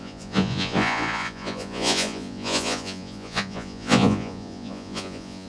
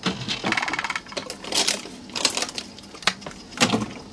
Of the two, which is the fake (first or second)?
first